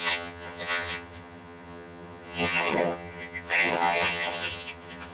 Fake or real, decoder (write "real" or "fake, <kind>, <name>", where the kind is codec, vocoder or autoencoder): fake, vocoder, HiFi-GAN